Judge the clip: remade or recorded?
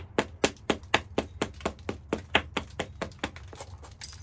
recorded